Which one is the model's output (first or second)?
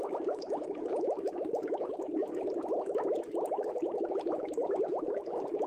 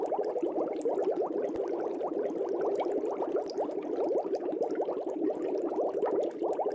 first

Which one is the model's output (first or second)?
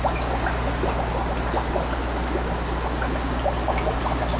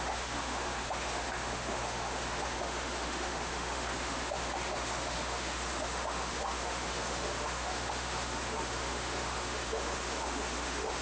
second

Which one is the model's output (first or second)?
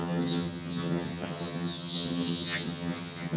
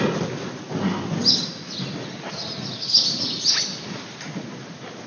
first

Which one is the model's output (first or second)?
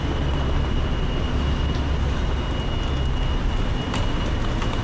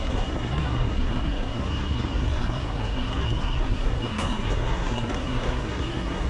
second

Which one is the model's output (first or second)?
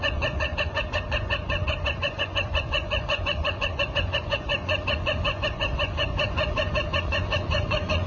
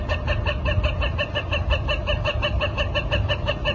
first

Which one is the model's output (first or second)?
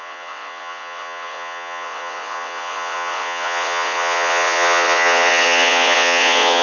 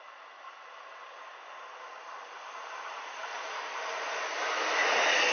first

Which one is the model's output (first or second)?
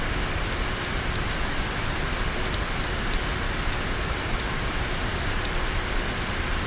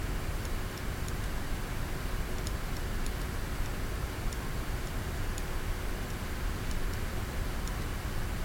first